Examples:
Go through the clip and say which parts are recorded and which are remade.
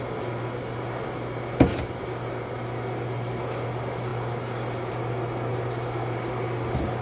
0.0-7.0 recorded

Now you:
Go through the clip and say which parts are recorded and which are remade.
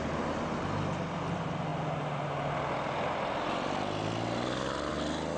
0.0-5.4 recorded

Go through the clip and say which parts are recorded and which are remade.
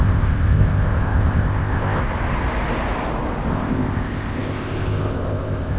0.0-2.0 remade; 2.0-3.5 recorded; 3.5-5.8 remade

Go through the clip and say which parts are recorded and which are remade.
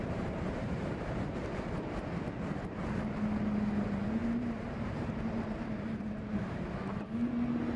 0.0-0.6 recorded; 0.6-1.5 remade; 1.5-4.2 recorded; 4.2-6.6 remade; 6.6-7.8 recorded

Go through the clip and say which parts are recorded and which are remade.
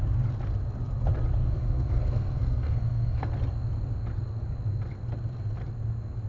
0.0-1.4 recorded; 1.4-3.3 remade; 3.3-6.3 recorded